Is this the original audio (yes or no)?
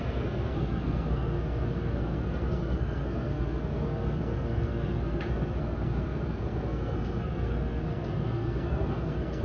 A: no